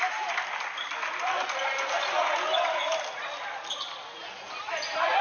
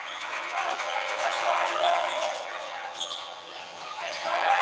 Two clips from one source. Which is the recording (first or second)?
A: first